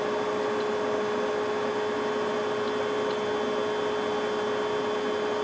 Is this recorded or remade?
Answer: recorded